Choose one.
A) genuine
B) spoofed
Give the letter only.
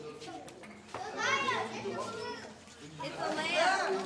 A